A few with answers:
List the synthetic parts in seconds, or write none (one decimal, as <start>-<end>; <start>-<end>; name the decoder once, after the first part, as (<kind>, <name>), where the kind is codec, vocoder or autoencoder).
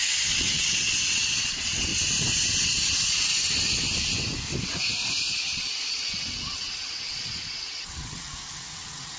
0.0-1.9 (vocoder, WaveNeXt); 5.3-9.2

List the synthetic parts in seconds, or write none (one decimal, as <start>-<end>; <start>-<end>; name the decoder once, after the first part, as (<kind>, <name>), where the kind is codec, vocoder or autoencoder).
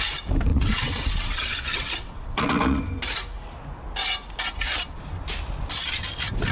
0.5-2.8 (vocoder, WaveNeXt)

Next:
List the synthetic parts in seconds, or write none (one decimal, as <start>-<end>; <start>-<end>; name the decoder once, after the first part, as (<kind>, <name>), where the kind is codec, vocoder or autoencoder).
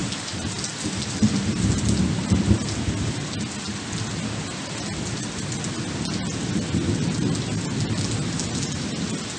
none